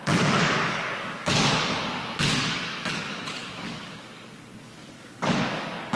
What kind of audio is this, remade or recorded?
remade